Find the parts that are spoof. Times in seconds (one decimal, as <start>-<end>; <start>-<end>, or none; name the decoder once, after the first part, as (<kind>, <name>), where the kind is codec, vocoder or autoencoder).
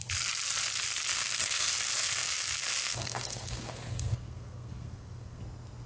1.1-1.7 (codec, SNAC); 2.9-5.4